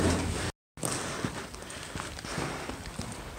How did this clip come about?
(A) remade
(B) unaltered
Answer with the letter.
B